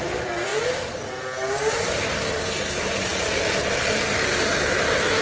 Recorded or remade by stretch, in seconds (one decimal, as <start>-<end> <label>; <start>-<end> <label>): 0.0-0.5 remade; 0.5-1.1 recorded; 1.1-3.1 remade; 3.1-4.0 recorded; 4.0-5.2 remade